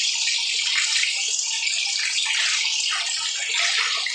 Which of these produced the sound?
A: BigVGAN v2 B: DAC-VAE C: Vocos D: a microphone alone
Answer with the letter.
D